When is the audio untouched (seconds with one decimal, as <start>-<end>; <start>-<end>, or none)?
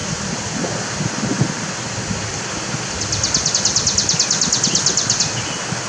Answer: 0.0-5.9